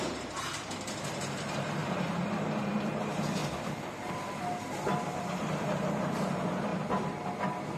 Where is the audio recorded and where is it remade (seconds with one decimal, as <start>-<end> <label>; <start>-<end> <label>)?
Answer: 0.0-3.4 remade; 3.4-5.1 recorded; 5.1-6.7 remade; 6.7-7.8 recorded